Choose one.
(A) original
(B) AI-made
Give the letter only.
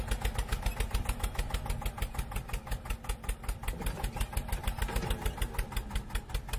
A